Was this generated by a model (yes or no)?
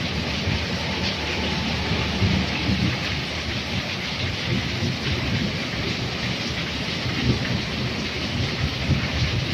no